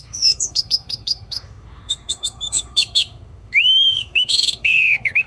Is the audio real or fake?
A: fake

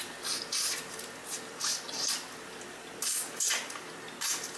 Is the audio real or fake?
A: real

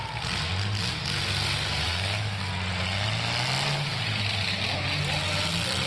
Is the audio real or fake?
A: real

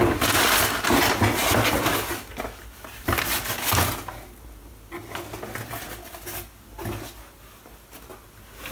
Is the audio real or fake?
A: real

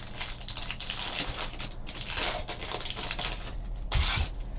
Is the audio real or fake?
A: real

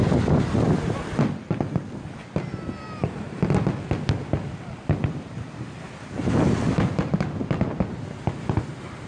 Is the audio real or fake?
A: real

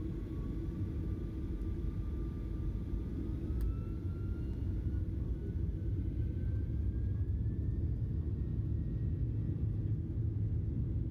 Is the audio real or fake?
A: real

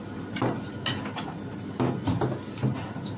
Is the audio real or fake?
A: real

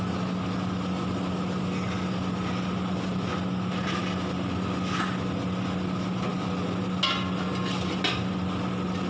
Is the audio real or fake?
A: real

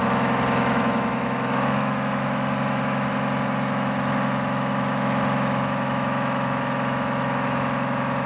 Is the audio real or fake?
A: fake